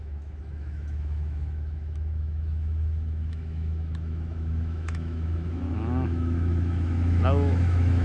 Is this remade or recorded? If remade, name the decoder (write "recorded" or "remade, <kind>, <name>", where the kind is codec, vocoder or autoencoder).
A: remade, autoencoder, DAC-VAE